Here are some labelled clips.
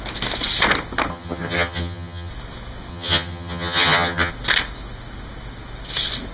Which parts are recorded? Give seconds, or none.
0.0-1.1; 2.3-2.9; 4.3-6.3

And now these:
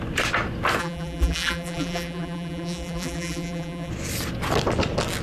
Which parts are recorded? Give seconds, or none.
0.0-0.8; 3.9-5.2

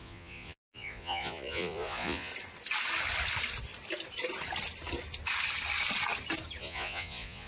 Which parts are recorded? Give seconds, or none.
2.3-6.6

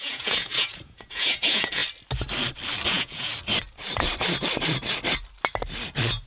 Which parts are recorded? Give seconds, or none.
1.8-2.9; 3.3-6.3

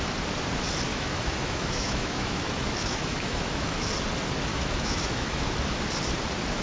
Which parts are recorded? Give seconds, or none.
0.0-0.9; 3.9-4.5; 5.5-6.6

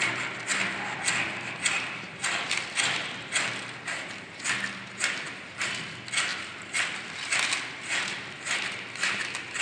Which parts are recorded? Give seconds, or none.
0.0-9.6

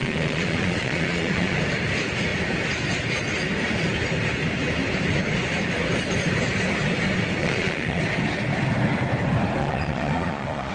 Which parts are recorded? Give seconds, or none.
1.6-7.4; 8.0-9.6

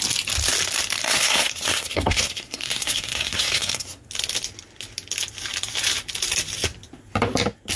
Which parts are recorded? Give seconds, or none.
0.0-1.0; 4.1-7.8